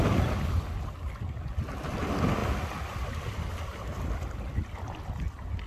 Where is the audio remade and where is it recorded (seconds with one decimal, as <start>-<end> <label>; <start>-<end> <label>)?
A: 0.0-5.7 recorded